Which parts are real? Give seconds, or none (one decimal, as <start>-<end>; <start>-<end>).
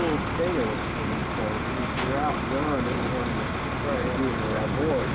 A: 0.0-5.1